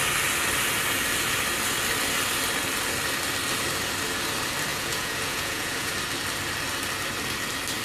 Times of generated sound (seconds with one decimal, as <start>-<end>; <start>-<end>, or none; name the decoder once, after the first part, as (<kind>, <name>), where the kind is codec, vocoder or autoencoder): 4.7-5.9 (vocoder, Vocos)